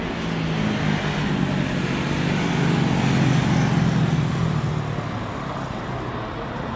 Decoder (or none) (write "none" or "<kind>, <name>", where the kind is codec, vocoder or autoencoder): none